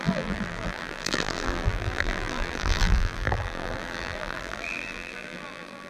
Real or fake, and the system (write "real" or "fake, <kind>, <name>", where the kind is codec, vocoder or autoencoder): fake, vocoder, BigVGAN v2